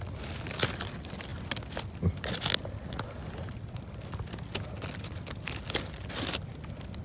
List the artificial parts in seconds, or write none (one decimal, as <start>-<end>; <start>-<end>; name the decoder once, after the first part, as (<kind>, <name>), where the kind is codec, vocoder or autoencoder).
none